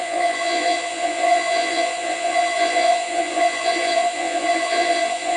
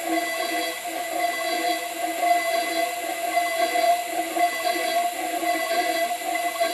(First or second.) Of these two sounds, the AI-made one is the first